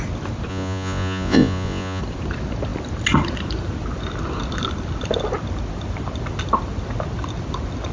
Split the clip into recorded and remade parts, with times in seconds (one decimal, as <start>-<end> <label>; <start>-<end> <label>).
0.0-0.5 recorded; 0.5-2.0 remade; 2.0-7.9 recorded